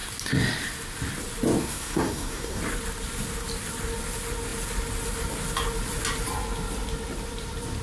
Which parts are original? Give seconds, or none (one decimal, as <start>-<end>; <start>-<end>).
0.0-1.6; 2.6-7.8